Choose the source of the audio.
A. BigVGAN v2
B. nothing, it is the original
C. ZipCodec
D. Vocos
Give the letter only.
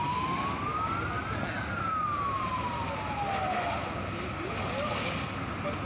B